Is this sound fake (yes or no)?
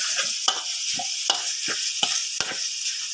no